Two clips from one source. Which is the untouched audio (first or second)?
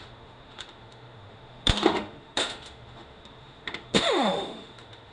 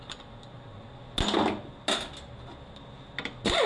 second